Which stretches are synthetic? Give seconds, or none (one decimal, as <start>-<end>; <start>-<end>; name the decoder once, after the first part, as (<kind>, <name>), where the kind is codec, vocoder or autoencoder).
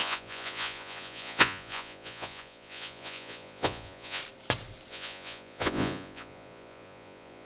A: 0.0-4.2 (vocoder, Vocos); 4.9-7.5